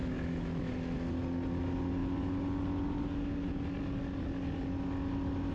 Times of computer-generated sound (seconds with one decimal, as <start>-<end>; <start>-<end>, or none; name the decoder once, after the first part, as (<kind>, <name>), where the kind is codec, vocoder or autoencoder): 0.0-0.7 (autoencoder, DAC-VAE)